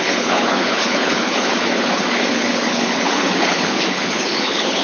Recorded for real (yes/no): no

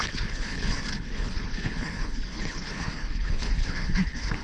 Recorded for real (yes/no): no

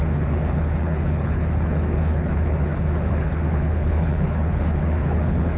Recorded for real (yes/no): no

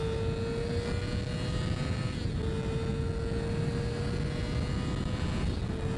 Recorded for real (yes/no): yes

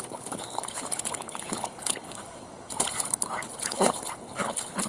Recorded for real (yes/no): no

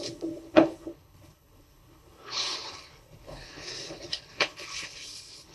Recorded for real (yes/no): no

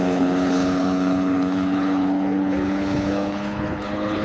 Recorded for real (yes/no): no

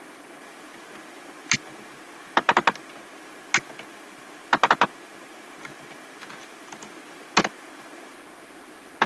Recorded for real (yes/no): yes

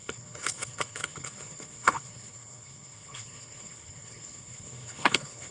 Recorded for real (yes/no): no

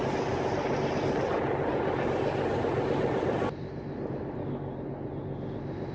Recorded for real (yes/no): yes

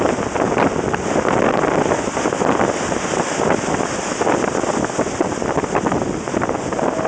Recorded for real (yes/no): yes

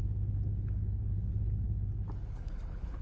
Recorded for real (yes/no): no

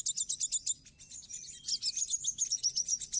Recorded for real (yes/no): yes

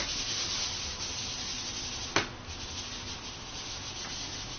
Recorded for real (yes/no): yes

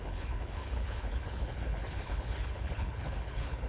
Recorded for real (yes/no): no